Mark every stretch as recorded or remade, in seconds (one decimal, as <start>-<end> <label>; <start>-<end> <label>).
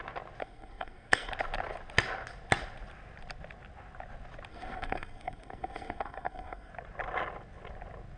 0.0-0.4 recorded; 0.4-1.3 remade; 1.3-4.5 recorded; 4.5-6.7 remade; 6.7-8.2 recorded